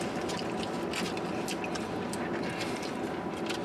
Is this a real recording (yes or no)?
yes